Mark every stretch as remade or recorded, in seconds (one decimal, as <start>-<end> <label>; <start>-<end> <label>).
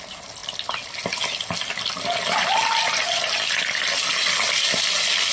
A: 0.0-5.3 recorded